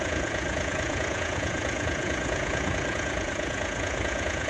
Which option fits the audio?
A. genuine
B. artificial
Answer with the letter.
B